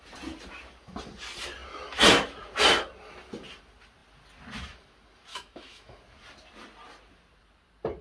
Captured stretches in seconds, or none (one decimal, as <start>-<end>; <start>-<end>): 0.0-5.3; 6.0-8.0